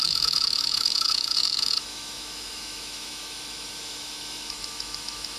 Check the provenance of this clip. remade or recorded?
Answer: remade